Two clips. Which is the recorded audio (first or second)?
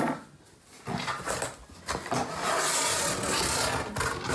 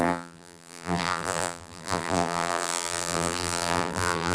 first